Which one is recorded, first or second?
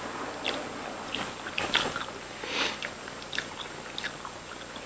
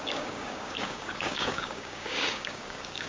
first